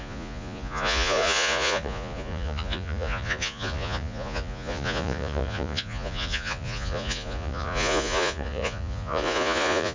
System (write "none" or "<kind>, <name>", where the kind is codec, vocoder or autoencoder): vocoder, Vocos